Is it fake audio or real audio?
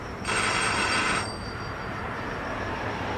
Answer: fake